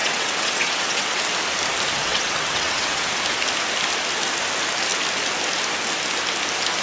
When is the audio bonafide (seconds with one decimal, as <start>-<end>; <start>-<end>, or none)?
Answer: 1.2-1.9; 3.1-6.8